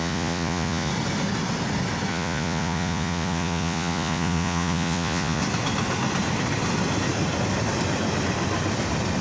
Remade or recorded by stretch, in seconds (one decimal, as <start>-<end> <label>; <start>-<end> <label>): 0.0-0.9 remade; 0.9-2.1 recorded; 2.1-5.4 remade; 5.4-9.2 recorded